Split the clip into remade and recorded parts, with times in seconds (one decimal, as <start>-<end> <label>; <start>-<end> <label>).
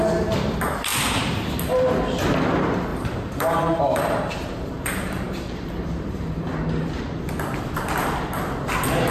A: 0.0-2.9 recorded; 2.9-7.0 remade; 7.0-9.1 recorded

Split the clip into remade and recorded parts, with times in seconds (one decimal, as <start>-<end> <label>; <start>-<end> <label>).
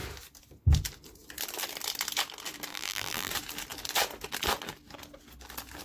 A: 0.0-2.7 recorded; 2.7-3.3 remade; 3.3-5.8 recorded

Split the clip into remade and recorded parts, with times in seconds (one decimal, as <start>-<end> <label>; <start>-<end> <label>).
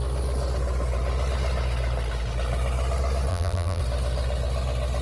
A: 0.0-3.3 recorded; 3.3-3.8 remade; 3.8-5.0 recorded